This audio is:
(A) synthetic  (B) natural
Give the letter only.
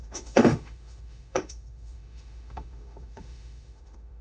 A